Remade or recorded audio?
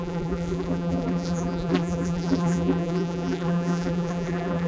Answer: remade